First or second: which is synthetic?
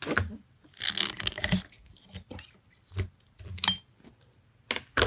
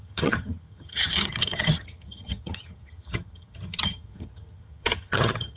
second